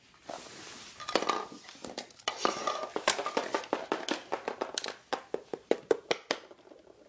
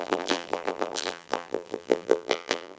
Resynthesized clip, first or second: second